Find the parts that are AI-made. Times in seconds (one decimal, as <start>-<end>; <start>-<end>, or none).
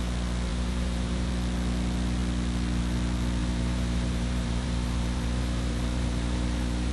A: 0.5-1.3; 3.4-6.9